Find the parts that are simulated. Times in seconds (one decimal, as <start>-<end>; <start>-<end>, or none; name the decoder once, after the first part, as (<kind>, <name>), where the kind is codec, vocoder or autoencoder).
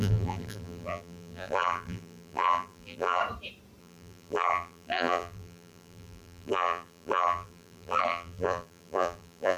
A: 0.0-3.2 (vocoder, BigVGAN v2); 3.8-9.6